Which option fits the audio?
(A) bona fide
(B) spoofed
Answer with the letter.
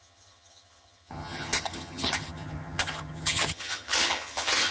B